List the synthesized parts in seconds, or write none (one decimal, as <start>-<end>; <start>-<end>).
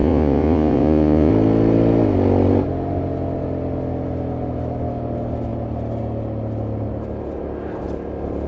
0.0-1.3